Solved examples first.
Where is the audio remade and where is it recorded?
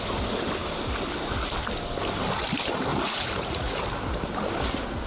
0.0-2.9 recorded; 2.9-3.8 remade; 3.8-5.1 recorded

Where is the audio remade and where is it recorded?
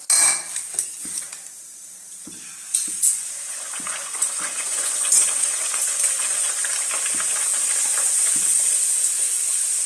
0.0-2.8 recorded; 2.8-6.5 remade; 6.5-9.9 recorded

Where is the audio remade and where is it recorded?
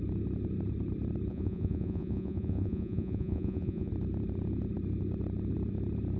0.0-1.3 recorded; 1.3-3.9 remade; 3.9-6.2 recorded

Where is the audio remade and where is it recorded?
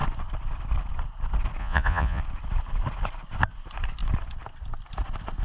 0.0-1.6 recorded; 1.6-2.2 remade; 2.2-5.4 recorded